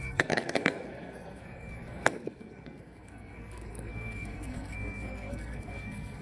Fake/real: fake